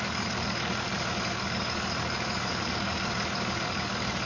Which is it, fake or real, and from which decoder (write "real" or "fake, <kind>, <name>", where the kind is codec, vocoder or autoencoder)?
fake, codec, DAC